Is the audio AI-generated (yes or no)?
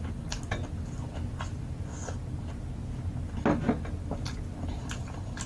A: no